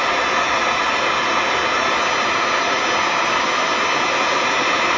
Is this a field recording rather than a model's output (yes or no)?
yes